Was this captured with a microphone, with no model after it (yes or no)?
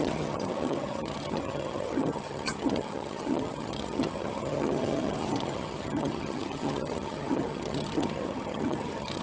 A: no